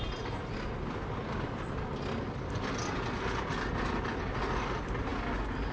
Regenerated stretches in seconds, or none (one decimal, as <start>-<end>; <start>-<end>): none